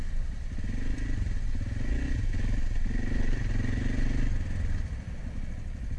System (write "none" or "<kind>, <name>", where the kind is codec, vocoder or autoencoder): none